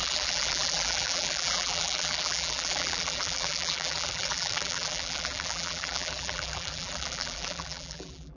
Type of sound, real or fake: fake